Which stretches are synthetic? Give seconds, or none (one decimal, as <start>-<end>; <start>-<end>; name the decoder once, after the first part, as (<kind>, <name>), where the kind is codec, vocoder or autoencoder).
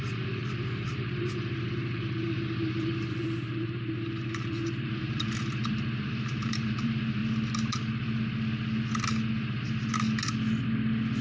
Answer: 0.0-7.2 (vocoder, BigVGAN v2)